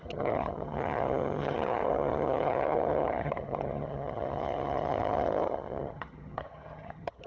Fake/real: fake